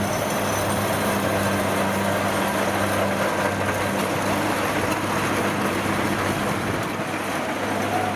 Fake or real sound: real